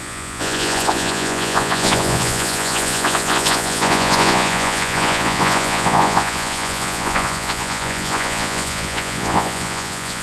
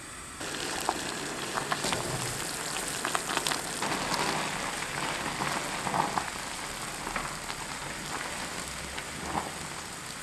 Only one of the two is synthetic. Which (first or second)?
first